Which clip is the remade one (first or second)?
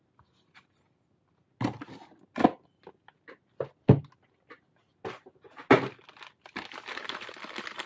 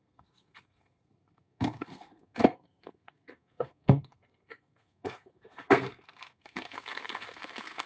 second